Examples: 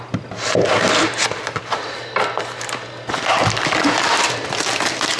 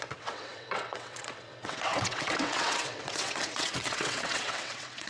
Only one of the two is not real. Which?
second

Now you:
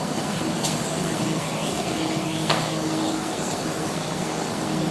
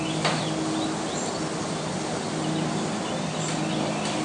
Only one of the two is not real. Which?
first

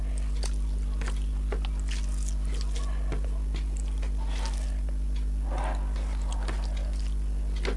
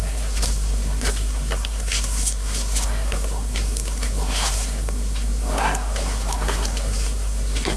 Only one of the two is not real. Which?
second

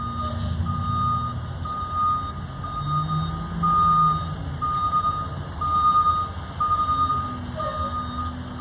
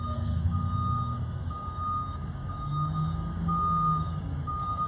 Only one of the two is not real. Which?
second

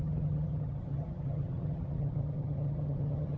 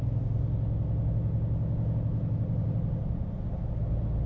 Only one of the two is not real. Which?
first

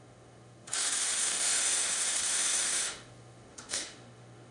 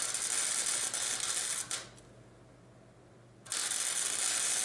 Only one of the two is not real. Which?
first